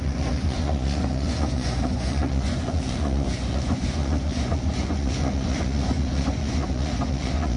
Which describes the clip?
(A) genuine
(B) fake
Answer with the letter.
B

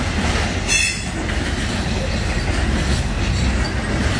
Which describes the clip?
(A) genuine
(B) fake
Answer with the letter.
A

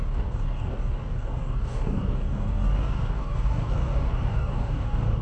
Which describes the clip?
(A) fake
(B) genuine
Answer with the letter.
A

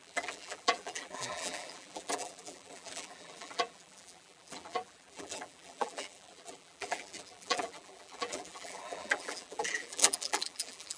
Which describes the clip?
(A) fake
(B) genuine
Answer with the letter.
A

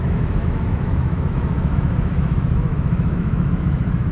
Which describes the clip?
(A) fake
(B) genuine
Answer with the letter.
A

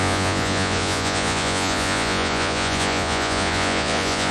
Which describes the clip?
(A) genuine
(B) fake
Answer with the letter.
B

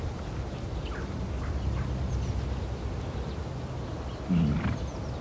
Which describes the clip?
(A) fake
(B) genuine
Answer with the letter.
B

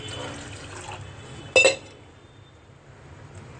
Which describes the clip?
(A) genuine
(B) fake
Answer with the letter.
A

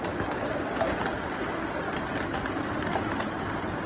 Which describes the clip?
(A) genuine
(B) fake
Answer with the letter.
A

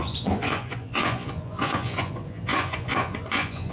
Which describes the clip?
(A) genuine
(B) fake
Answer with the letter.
B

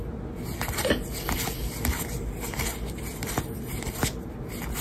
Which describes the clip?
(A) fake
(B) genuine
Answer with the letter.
B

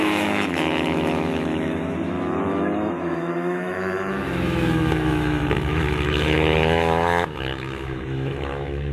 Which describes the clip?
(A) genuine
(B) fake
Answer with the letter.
B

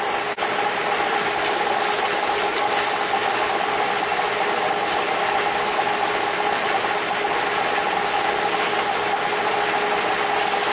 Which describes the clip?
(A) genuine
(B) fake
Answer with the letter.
A